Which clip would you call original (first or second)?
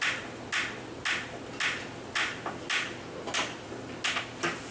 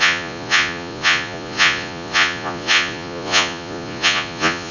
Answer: first